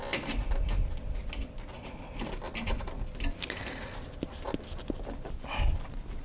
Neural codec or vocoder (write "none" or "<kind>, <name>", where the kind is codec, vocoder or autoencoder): none